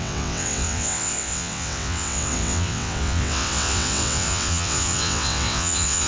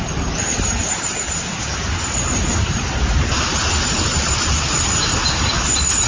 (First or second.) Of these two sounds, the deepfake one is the first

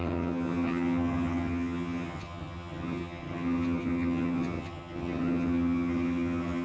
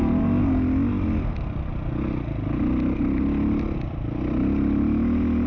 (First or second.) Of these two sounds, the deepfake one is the first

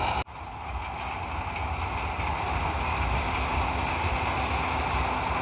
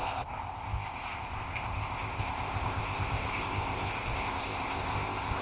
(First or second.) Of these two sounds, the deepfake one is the second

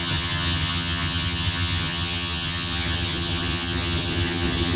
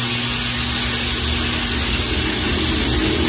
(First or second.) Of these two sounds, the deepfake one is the first